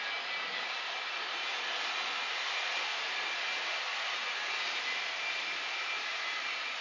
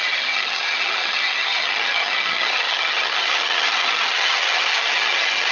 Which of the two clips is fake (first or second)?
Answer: second